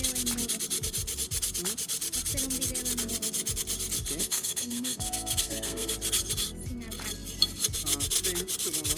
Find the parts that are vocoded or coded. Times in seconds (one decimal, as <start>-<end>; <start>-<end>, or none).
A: 4.2-5.9